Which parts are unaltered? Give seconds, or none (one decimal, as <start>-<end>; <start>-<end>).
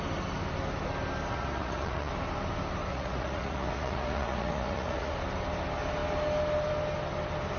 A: 0.0-1.3; 2.1-2.9; 5.1-7.6